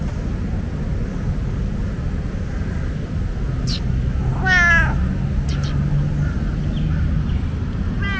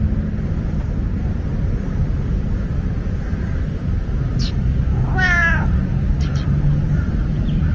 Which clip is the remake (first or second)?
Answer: second